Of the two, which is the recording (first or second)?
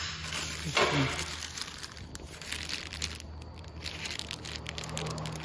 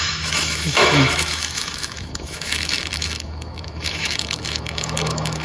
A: first